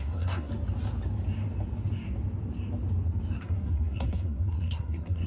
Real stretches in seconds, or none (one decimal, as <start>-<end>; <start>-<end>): 0.5-3.4

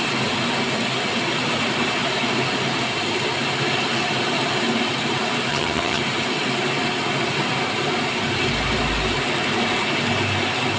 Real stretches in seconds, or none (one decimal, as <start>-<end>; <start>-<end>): 0.0-5.5; 6.0-10.8

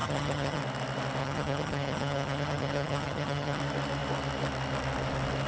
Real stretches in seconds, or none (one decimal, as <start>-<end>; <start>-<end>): 0.6-1.2; 3.6-5.5

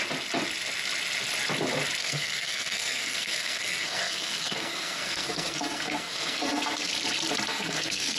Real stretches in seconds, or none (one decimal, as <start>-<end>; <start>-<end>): 0.0-2.0; 6.9-7.5

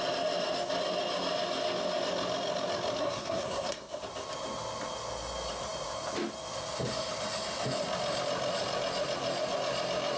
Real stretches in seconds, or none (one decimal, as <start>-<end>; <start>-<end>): 0.0-3.0; 4.0-10.2

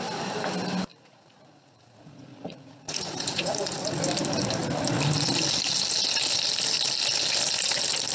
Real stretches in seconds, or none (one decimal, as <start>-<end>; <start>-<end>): 0.0-0.9; 3.8-8.1

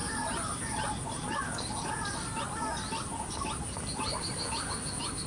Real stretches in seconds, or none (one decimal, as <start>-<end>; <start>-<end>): 0.0-5.3

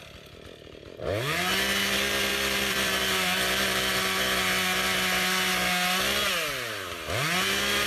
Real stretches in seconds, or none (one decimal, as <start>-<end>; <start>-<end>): 0.0-2.3; 3.0-7.9